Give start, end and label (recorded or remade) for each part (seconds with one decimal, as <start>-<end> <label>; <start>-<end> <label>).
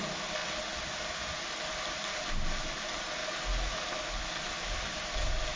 0.0-5.6 recorded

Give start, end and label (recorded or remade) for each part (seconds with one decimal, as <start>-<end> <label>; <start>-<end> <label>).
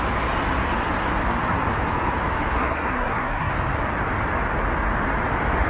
0.0-2.6 recorded; 2.6-3.5 remade; 3.5-5.7 recorded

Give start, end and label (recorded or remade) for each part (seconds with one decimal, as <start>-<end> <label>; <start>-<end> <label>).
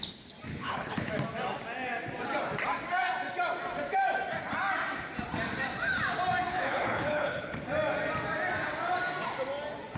0.0-0.5 recorded; 0.5-1.1 remade; 1.1-6.5 recorded; 6.5-7.6 remade; 7.6-10.0 recorded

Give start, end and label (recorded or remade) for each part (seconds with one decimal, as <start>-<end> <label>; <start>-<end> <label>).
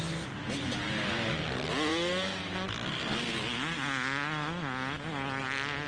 0.0-5.9 recorded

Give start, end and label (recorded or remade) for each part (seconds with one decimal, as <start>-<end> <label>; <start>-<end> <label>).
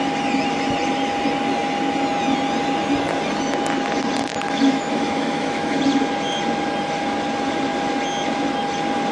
0.0-4.3 recorded; 4.3-5.8 remade; 5.8-9.1 recorded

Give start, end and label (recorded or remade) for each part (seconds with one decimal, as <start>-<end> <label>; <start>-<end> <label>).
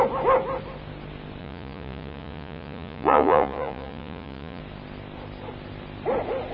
0.0-1.4 recorded; 1.4-4.6 remade; 4.6-6.5 recorded